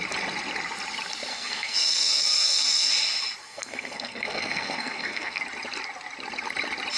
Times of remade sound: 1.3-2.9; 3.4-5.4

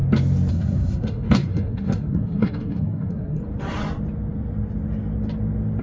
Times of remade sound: 0.5-3.4

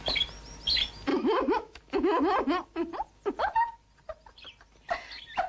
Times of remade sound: 1.1-2.2

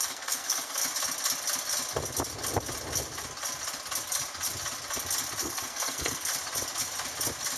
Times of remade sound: 0.0-0.8; 5.4-6.3

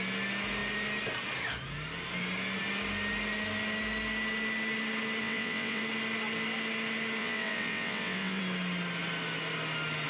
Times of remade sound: 5.2-5.8; 7.2-8.4